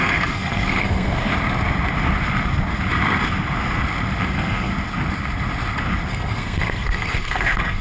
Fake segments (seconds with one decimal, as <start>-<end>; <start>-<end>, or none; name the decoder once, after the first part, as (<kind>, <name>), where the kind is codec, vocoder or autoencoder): 0.0-1.3 (codec, SNAC); 4.2-4.7; 6.1-7.8